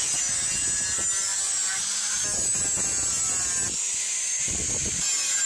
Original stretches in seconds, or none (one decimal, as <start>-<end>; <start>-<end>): 0.0-5.5